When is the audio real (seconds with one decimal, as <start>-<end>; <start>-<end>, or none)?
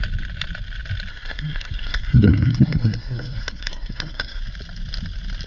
0.0-1.1; 4.4-5.5